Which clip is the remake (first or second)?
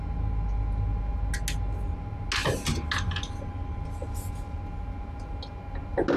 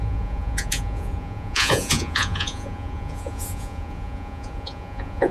second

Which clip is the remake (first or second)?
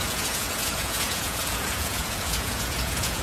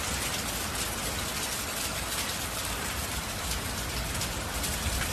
first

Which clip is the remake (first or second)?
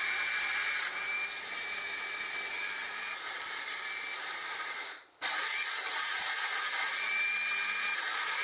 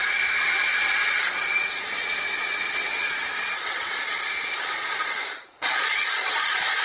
second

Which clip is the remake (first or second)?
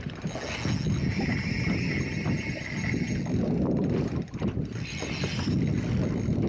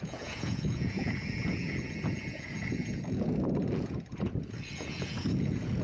second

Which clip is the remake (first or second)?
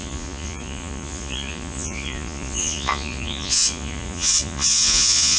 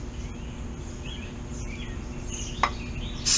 first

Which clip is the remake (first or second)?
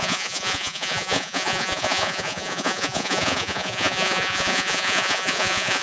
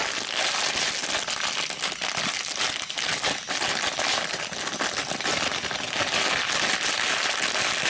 first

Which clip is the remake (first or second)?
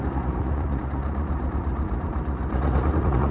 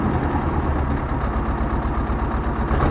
first